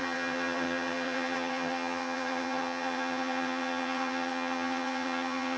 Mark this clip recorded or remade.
remade